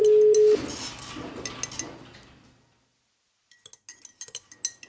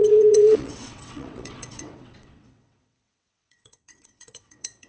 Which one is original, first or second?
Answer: first